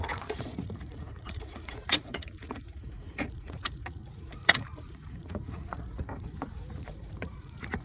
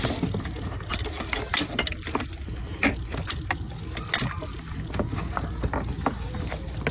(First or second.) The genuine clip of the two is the second